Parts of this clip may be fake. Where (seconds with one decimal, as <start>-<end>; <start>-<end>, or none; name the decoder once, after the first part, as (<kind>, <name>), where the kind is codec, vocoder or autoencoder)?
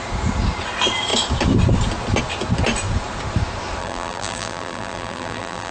3.8-5.7 (vocoder, BigVGAN v2)